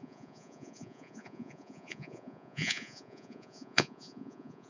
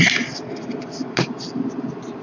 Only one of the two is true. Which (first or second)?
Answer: second